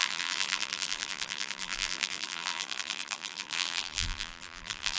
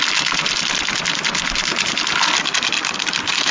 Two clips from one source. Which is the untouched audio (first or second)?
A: second